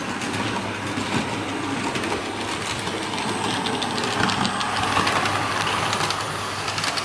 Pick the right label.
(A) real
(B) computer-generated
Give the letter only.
A